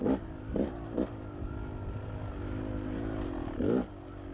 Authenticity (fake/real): real